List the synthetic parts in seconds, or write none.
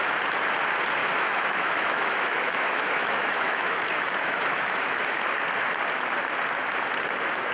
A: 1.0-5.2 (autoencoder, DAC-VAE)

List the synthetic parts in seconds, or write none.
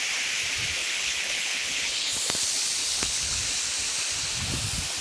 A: 0.8-2.0 (codec, HILCodec); 2.8-3.4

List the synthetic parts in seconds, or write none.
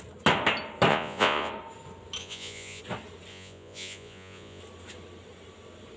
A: 0.9-1.5 (vocoder, Vocos); 2.2-2.8; 3.3-4.6